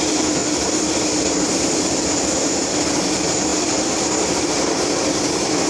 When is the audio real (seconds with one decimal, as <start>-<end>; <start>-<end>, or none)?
0.0-0.4; 1.7-3.5; 4.7-5.7